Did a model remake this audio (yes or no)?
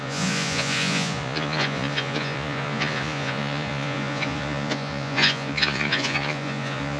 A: yes